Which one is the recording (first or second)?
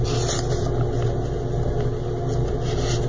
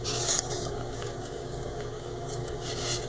first